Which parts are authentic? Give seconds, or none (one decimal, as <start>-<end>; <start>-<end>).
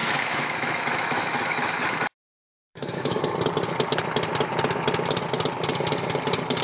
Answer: 1.8-2.5; 3.2-6.6